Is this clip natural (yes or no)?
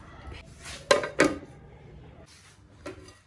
yes